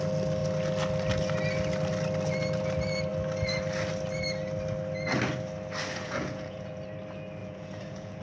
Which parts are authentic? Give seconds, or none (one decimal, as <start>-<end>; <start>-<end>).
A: 0.0-5.9; 6.8-7.4